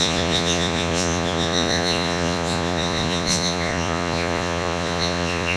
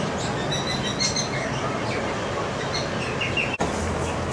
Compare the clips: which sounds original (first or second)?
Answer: second